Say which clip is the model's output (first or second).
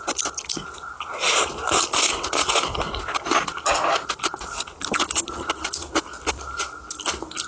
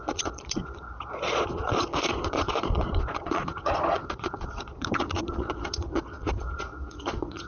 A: second